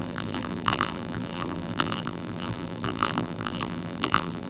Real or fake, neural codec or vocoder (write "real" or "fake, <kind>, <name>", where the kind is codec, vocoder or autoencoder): fake, vocoder, BigVGAN v2